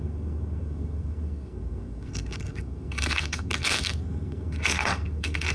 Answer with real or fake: fake